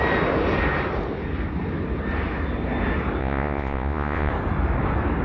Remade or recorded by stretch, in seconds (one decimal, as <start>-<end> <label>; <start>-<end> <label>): 0.0-3.2 recorded; 3.2-4.3 remade; 4.3-5.2 recorded